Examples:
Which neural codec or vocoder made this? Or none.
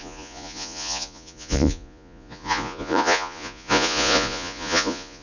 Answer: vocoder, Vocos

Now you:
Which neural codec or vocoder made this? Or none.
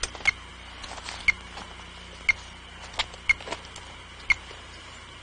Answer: none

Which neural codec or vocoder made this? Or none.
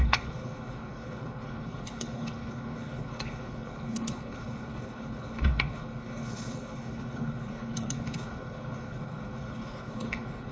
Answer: codec, HILCodec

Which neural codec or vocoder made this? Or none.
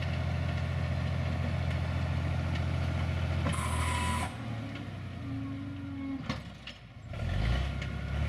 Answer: none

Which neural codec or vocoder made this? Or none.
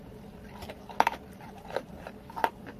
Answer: vocoder, BigVGAN v2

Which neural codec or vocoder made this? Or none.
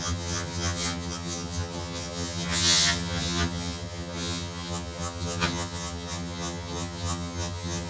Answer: vocoder, HiFi-GAN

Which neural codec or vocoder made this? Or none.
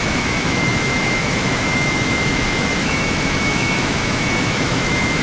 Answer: autoencoder, DAC-VAE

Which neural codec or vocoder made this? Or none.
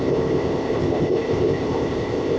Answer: codec, ZipCodec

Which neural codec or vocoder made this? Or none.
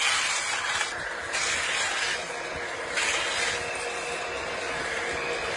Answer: none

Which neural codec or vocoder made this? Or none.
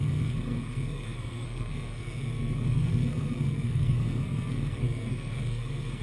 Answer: codec, SNAC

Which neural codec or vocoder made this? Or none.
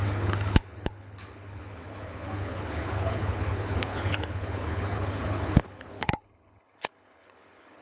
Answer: codec, HILCodec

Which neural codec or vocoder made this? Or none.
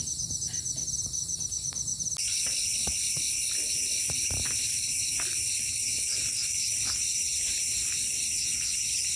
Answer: none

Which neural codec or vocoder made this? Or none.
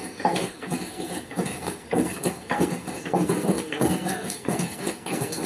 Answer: codec, SNAC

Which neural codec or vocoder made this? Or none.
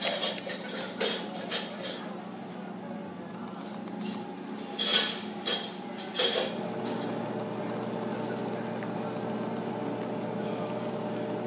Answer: none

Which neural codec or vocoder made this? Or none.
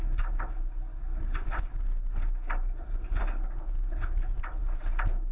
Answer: none